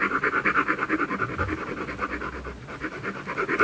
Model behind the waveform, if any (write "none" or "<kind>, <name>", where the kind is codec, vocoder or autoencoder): none